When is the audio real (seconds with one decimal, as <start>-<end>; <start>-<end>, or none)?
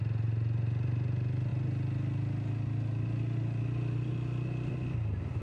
0.0-5.4